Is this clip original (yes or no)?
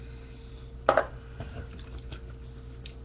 yes